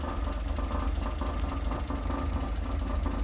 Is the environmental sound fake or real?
real